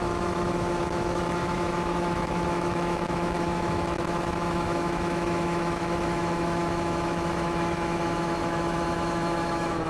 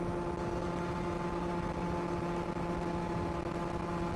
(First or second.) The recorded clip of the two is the second